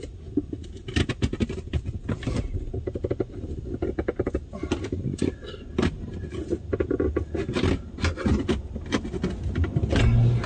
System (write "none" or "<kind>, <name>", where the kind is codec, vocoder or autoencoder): none